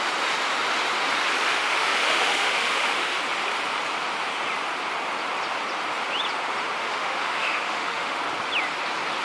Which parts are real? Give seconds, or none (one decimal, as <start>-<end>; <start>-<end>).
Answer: 0.0-1.5; 3.2-6.8; 8.2-9.2